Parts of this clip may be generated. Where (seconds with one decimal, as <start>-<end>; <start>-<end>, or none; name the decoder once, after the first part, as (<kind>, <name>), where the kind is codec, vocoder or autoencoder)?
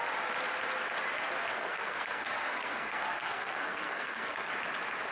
1.5-4.5 (codec, SNAC)